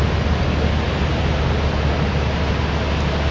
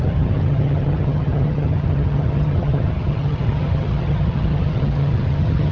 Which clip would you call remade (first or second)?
second